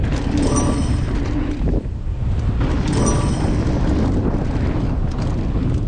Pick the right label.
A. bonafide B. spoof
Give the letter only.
A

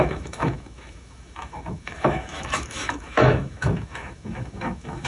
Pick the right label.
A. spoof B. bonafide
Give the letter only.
A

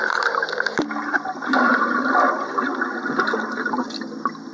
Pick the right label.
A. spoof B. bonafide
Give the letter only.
B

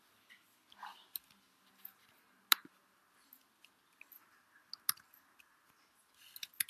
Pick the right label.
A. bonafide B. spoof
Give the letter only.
A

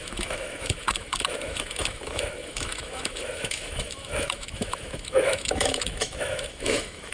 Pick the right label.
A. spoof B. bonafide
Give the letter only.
A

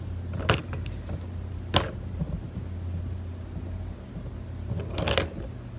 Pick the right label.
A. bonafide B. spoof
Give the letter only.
A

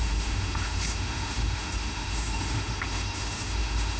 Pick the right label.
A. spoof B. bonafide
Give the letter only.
A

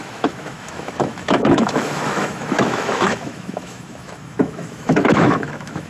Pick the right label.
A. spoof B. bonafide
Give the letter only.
A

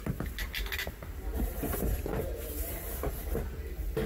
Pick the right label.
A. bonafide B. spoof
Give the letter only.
A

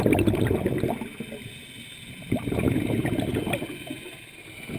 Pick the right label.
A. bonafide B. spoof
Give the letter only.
A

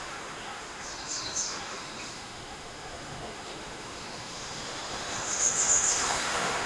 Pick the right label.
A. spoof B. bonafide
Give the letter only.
A